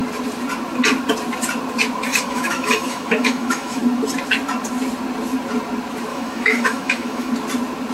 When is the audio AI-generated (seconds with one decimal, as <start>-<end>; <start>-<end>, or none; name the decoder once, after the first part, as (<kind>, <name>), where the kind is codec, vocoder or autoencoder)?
2.1-3.8 (autoencoder, DAC-VAE); 6.1-7.3